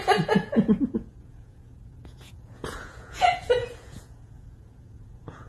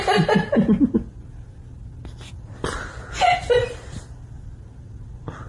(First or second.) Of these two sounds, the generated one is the first